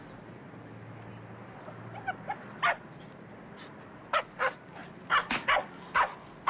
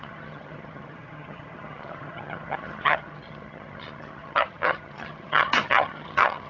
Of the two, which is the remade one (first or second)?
second